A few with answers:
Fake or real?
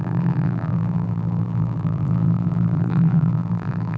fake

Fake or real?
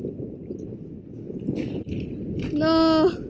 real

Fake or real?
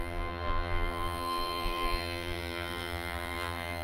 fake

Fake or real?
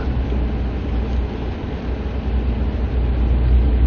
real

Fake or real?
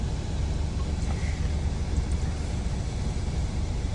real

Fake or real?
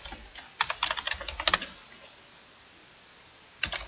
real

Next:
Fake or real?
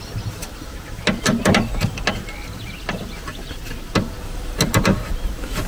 real